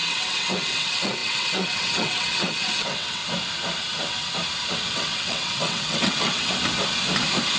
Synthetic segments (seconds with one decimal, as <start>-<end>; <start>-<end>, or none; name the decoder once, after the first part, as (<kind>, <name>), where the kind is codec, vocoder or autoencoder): 0.0-3.2 (vocoder, WaveNeXt); 4.9-6.5